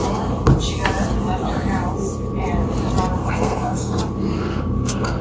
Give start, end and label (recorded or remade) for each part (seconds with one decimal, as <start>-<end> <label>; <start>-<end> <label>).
0.0-3.2 recorded; 3.2-4.0 remade; 4.0-4.4 recorded; 4.4-5.2 remade